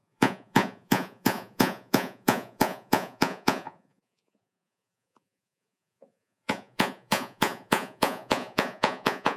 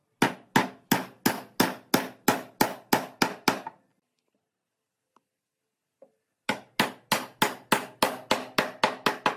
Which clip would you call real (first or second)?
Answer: second